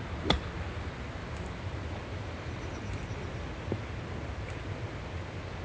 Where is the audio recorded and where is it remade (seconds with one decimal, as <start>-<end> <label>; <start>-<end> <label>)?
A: 0.0-5.6 recorded